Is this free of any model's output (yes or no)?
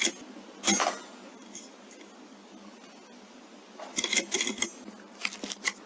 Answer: yes